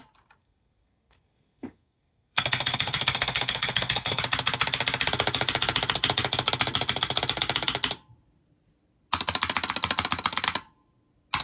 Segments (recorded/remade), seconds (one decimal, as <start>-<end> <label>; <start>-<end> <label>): 0.0-0.4 recorded; 0.4-4.2 remade; 4.2-11.4 recorded